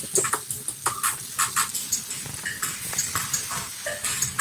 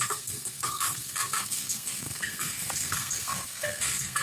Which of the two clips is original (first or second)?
first